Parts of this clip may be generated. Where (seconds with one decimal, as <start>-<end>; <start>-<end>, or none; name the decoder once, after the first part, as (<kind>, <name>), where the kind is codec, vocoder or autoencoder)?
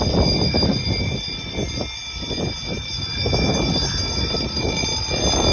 none